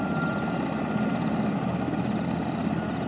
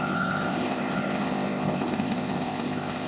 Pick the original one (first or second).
first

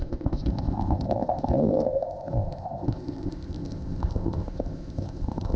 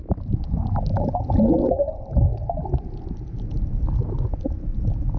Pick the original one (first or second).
second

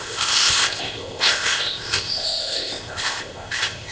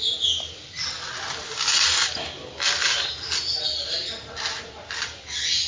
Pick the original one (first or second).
second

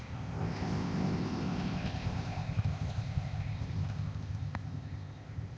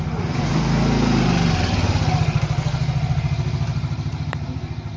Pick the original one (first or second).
second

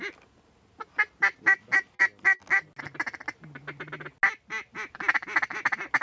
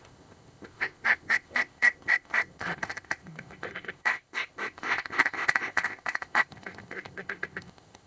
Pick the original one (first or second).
first